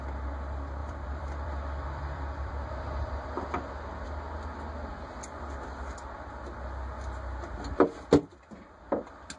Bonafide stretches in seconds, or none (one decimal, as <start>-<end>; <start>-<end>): 0.0-0.8; 2.5-9.4